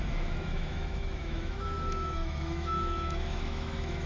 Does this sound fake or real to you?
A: fake